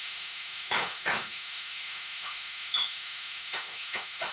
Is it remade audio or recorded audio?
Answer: remade